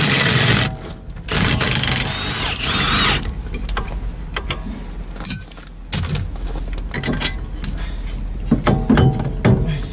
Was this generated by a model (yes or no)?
no